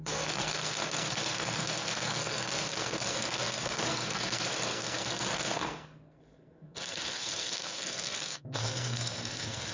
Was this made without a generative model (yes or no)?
no